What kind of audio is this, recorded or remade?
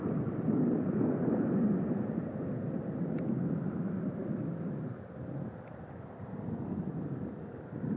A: recorded